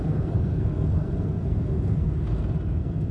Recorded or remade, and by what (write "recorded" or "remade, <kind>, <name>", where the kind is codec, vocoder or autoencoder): remade, codec, SNAC